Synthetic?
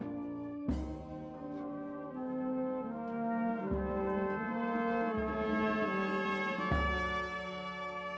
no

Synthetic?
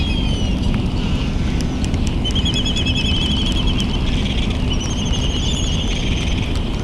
no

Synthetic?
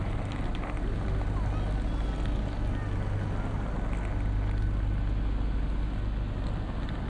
no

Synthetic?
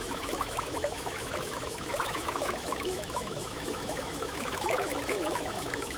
yes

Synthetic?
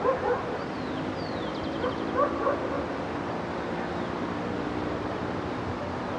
no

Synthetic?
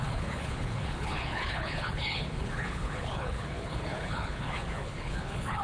yes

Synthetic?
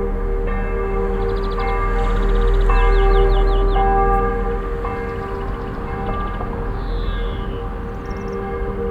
no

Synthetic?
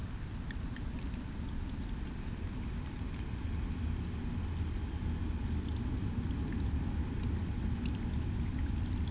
no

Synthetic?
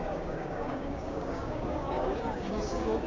yes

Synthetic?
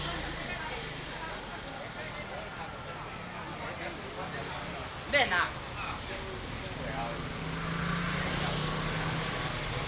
no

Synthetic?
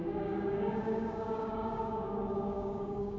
yes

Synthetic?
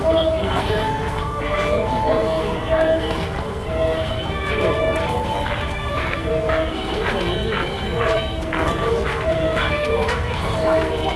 yes